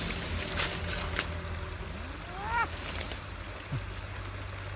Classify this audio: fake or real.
real